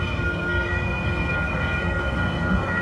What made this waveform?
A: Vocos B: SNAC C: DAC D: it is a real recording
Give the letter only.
B